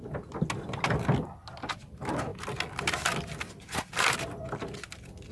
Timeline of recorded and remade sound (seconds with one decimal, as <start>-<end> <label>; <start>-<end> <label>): 0.0-5.3 recorded